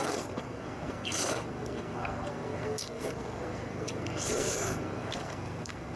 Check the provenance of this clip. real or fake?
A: fake